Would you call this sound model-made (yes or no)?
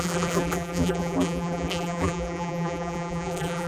yes